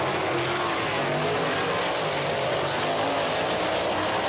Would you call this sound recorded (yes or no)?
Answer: yes